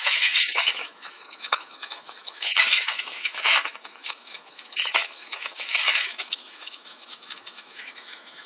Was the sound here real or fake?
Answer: fake